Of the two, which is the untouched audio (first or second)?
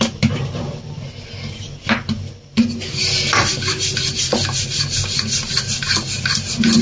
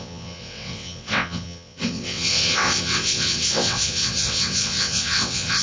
first